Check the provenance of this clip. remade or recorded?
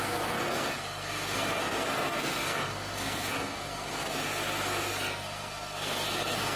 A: remade